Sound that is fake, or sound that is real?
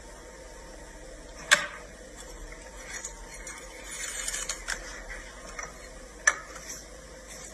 real